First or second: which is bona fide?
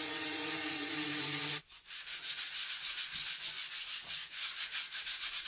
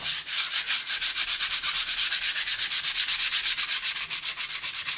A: second